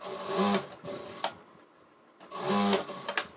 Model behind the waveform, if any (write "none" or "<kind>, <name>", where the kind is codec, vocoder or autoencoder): none